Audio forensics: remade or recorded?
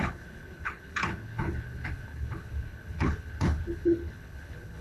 remade